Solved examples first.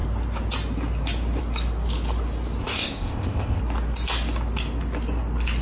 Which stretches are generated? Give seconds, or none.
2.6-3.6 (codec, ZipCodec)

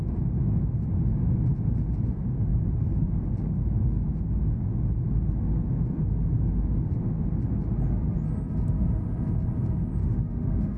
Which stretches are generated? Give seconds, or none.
10.0-10.8 (autoencoder, DAC-VAE)

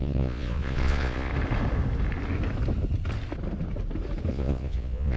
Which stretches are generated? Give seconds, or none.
0.0-1.3 (vocoder, Vocos); 4.3-5.2

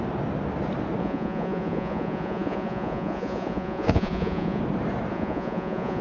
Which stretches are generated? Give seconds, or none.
1.0-4.6 (vocoder, Vocos); 5.1-6.0

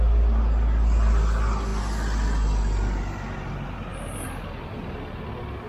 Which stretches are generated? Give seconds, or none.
none

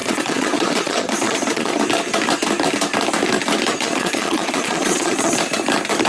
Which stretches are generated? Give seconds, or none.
0.0-1.8 (vocoder, Vocos); 3.7-5.3